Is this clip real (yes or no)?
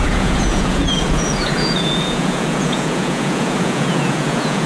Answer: no